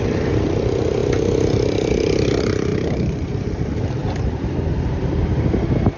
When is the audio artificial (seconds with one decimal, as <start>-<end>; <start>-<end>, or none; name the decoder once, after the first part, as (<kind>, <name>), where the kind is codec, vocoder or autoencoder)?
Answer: 2.7-3.6 (vocoder, BigVGAN v2); 4.0-5.5